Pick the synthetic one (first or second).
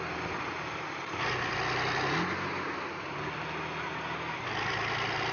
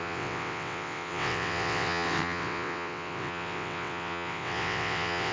second